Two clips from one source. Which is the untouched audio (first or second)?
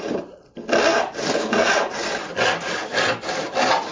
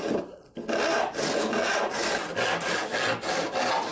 second